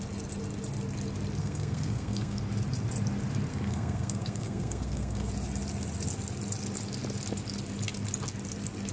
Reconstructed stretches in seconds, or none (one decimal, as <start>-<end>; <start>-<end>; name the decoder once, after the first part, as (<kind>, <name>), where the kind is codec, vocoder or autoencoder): 1.4-2.4 (codec, SNAC); 3.5-5.3